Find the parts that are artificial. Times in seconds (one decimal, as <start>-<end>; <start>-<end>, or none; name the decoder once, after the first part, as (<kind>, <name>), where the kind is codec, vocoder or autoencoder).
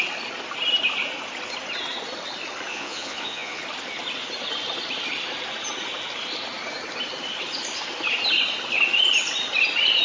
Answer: 2.7-3.6 (vocoder, Vocos)